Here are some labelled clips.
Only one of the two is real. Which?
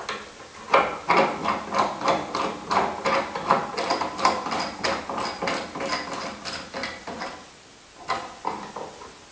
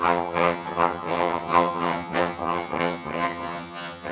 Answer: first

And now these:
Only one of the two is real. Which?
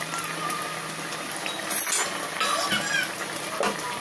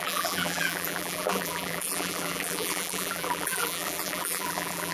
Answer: first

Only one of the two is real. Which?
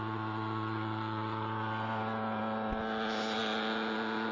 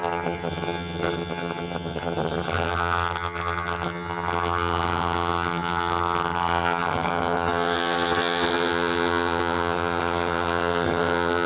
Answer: first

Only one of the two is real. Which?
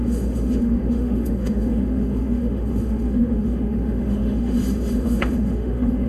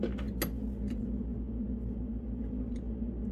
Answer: second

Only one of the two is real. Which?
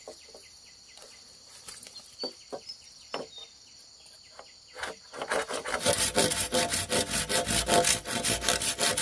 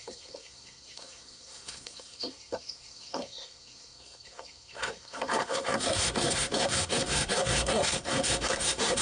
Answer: first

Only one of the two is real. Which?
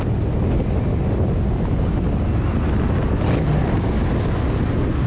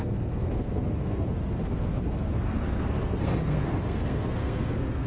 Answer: first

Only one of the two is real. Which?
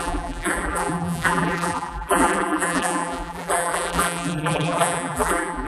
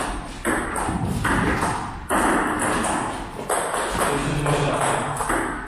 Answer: second